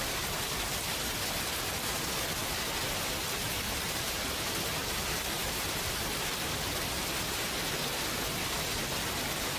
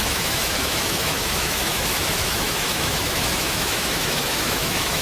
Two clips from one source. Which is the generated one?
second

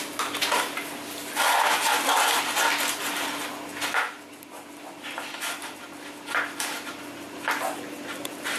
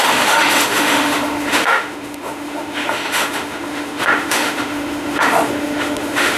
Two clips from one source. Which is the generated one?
second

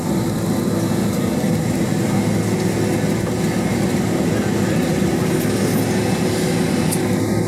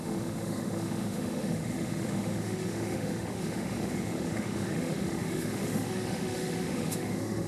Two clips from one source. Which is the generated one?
second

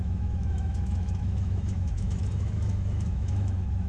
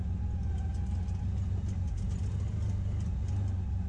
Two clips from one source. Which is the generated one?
first